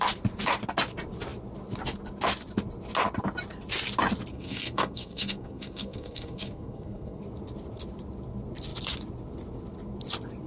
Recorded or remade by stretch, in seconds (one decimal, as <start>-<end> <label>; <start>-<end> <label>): 0.0-4.3 recorded; 4.3-7.2 remade; 7.2-10.5 recorded